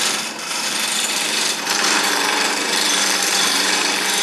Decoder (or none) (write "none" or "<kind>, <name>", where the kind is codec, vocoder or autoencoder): vocoder, BigVGAN v2